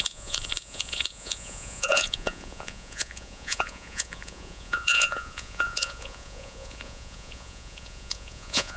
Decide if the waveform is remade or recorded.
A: remade